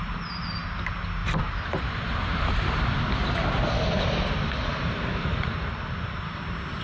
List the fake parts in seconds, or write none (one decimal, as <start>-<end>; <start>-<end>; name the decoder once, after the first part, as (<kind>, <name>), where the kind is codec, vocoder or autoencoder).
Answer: 1.2-2.8 (vocoder, BigVGAN v2); 3.2-3.7; 4.6-6.1